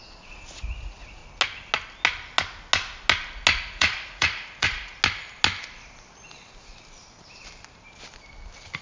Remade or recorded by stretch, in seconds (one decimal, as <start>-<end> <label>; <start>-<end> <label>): 0.0-1.2 remade; 1.2-3.6 recorded; 3.6-4.9 remade; 4.9-8.8 recorded